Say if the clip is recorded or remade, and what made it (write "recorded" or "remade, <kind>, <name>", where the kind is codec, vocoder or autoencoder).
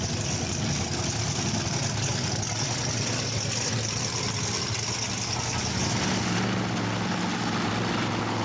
recorded